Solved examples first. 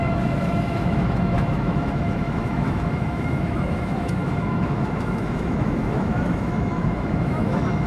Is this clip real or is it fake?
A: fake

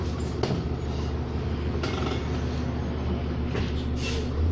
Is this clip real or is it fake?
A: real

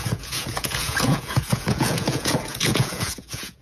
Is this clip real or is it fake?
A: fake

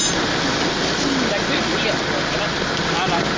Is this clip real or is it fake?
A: real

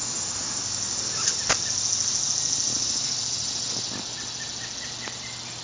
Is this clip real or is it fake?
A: real